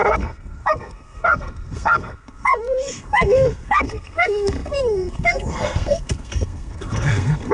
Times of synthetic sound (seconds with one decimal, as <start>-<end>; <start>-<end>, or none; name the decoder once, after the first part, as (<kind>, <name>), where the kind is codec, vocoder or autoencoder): 0.0-7.5 (codec, SNAC)